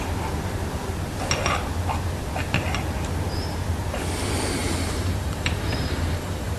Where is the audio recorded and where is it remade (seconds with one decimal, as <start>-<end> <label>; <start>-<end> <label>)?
0.0-4.6 recorded; 4.6-6.6 remade